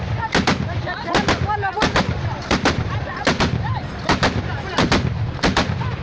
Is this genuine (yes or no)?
yes